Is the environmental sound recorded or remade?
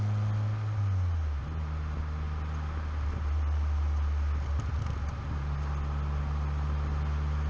recorded